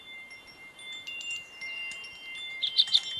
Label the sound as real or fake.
fake